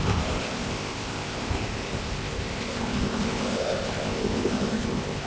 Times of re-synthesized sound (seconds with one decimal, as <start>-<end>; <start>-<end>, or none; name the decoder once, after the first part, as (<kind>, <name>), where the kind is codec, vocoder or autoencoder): 0.0-5.3 (codec, ZipCodec)